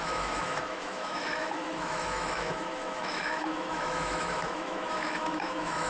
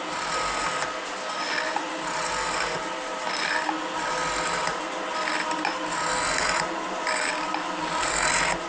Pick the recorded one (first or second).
second